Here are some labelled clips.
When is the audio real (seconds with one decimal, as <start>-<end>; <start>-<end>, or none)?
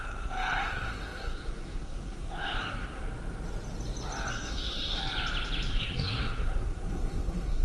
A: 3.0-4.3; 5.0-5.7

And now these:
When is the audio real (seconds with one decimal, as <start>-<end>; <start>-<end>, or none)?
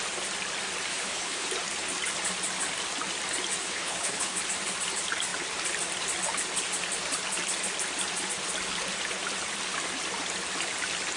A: 0.0-0.9; 1.5-3.6; 4.4-11.2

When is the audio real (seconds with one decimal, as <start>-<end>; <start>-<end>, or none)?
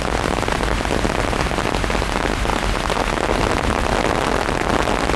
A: 0.0-5.2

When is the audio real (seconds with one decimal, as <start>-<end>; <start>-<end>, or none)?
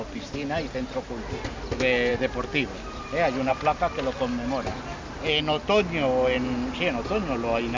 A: 0.0-7.8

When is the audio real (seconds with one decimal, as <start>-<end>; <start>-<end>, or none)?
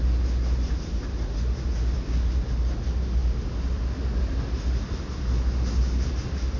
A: 0.0-6.6